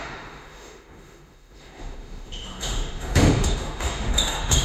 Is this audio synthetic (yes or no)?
yes